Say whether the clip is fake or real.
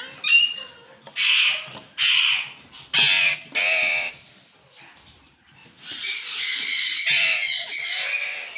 real